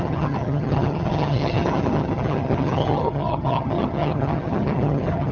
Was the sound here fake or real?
fake